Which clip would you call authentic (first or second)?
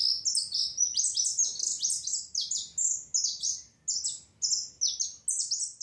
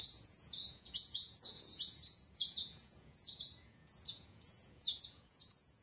first